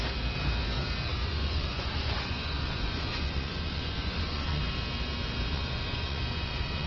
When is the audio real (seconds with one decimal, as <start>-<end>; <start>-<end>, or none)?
0.0-1.1; 4.6-5.5